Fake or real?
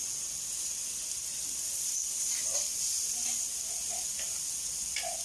real